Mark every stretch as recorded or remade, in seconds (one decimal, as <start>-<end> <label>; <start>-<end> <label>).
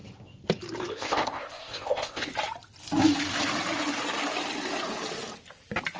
0.0-0.9 recorded; 0.9-2.3 remade; 2.3-6.0 recorded